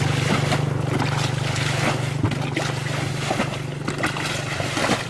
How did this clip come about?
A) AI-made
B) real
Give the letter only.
B